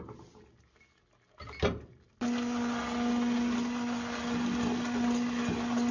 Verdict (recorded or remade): recorded